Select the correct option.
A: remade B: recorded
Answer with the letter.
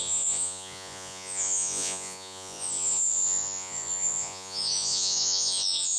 A